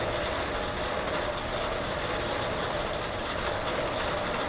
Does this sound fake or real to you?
real